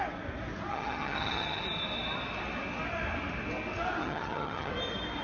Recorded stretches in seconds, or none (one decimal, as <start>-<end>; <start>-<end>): 0.0-0.7; 1.6-4.0; 4.7-5.2